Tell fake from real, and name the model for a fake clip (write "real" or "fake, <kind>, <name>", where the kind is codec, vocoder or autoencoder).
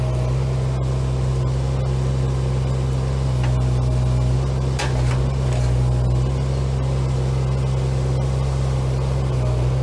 real